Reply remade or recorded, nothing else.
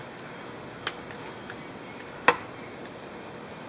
recorded